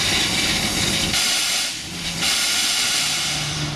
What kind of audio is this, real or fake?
fake